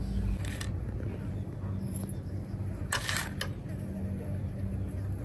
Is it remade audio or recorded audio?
recorded